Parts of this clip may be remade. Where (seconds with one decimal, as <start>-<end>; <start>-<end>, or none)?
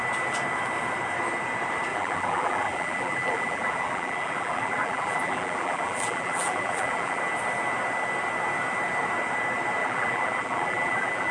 1.9-7.2; 9.8-11.3